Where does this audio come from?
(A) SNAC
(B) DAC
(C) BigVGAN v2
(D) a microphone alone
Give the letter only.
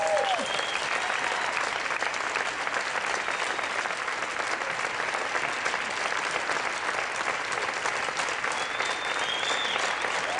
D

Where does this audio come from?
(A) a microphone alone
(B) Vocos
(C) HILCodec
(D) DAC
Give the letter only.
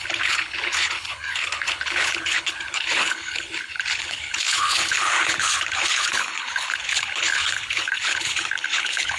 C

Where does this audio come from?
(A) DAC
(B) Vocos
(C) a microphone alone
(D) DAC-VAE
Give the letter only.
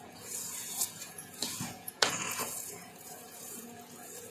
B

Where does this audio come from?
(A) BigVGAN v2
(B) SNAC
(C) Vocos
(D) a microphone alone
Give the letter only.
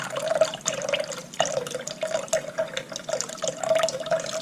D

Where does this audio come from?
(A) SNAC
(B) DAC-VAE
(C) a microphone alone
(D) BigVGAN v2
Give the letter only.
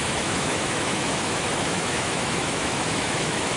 B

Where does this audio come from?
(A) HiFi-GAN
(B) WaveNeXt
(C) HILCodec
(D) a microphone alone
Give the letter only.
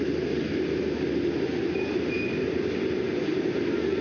D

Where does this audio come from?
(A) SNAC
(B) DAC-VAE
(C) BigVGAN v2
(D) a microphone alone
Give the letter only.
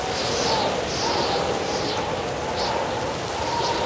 D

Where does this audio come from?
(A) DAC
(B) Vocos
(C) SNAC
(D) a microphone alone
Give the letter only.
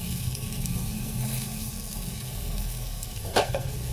C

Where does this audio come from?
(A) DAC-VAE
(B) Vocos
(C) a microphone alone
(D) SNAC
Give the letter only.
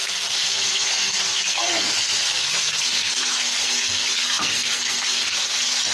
D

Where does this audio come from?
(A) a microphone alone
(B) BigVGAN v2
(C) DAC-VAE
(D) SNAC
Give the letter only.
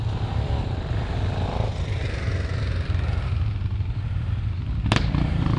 A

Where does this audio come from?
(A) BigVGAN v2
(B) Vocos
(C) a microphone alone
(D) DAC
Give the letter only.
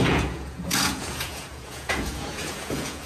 B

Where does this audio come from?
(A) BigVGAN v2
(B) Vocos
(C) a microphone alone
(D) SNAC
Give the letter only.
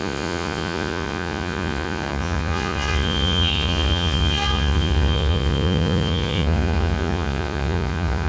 B